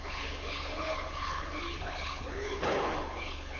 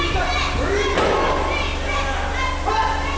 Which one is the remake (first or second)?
first